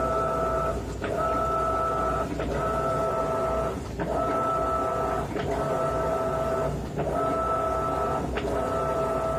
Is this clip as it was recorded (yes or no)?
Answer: yes